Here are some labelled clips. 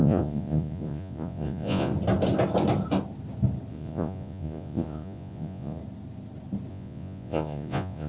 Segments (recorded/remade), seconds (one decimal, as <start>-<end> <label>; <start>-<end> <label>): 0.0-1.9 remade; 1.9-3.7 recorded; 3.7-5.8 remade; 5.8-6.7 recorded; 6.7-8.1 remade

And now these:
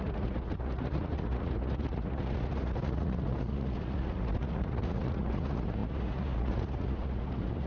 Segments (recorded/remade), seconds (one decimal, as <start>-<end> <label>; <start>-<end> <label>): 0.0-7.7 remade

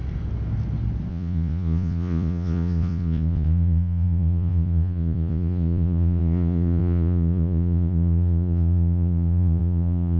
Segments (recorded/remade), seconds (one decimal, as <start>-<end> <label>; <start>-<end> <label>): 0.0-1.1 recorded; 1.1-10.2 remade

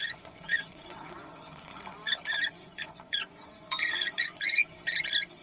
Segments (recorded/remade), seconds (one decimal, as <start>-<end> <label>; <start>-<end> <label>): 0.0-2.0 remade; 2.0-2.5 recorded; 2.5-4.6 remade; 4.6-5.4 recorded

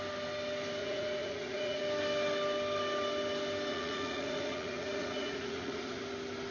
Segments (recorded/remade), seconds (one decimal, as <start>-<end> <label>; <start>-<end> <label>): 0.0-0.8 recorded; 0.8-1.8 remade; 1.8-3.7 recorded; 3.7-6.0 remade; 6.0-6.5 recorded

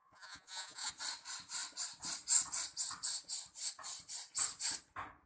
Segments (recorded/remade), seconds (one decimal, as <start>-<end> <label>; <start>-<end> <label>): 0.0-0.9 remade; 0.9-5.3 recorded